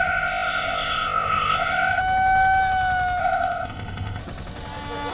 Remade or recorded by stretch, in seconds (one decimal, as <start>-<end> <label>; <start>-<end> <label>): 0.0-2.0 remade; 2.0-3.2 recorded; 3.2-4.2 remade; 4.2-5.1 recorded